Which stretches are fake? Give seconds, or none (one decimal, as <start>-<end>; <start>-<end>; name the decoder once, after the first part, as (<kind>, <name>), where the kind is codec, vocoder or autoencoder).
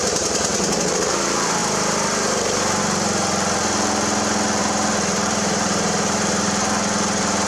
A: 1.6-2.8 (vocoder, BigVGAN v2); 4.6-7.5